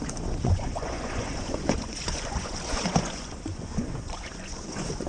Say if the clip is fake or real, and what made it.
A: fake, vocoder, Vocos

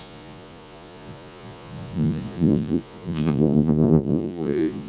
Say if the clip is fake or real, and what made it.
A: fake, vocoder, Vocos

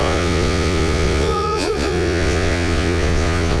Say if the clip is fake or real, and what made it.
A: fake, vocoder, Vocos